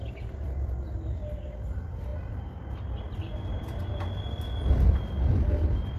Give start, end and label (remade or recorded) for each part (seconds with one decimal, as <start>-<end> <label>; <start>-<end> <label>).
0.0-6.0 recorded